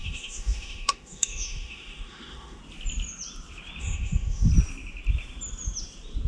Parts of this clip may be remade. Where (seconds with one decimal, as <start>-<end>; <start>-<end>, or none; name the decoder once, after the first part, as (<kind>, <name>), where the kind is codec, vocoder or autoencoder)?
0.0-2.6 (autoencoder, DAC-VAE); 3.8-4.5